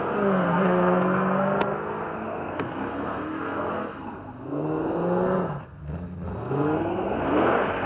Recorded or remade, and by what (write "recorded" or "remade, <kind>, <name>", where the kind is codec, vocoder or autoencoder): remade, codec, SNAC